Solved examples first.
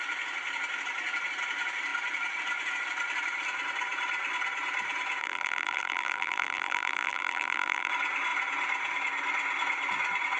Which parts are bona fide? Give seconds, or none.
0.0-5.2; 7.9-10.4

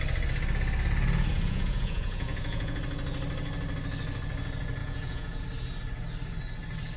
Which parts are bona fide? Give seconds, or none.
0.0-1.3; 2.8-4.8; 5.4-7.0

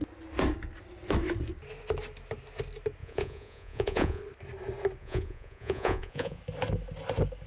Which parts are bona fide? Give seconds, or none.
0.0-3.0; 4.2-5.0; 6.4-7.5

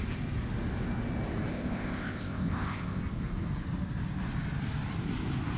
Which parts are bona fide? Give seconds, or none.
0.0-1.5; 3.0-5.6

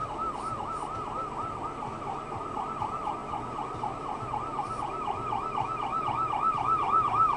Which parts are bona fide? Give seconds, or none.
0.0-7.4

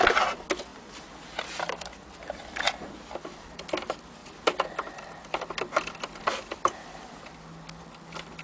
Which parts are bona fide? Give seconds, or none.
0.0-0.7; 3.6-4.2; 7.3-8.4

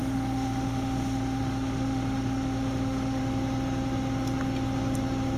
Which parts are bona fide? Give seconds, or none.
3.2-5.4